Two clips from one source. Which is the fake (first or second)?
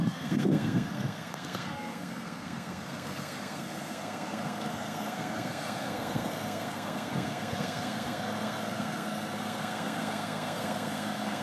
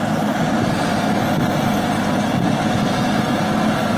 first